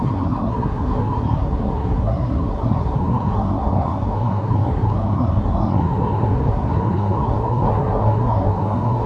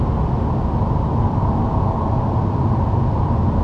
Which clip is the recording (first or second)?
second